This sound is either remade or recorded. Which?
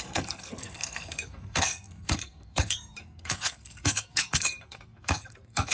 remade